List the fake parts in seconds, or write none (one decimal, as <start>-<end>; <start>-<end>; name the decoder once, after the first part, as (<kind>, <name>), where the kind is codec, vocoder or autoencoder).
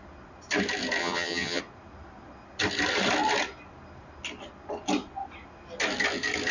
1.0-1.6 (vocoder, HiFi-GAN)